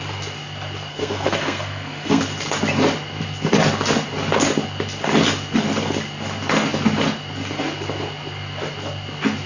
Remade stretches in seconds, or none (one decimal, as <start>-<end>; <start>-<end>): 0.9-2.2